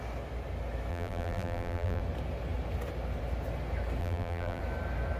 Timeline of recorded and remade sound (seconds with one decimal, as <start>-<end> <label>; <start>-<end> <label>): 0.0-0.9 recorded; 0.9-2.0 remade; 2.0-4.0 recorded; 4.0-4.6 remade; 4.6-5.2 recorded